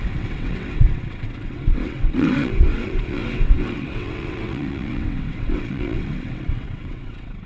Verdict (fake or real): fake